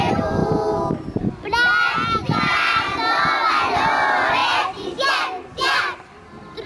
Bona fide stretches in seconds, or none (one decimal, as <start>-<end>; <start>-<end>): 0.4-1.0; 1.5-2.2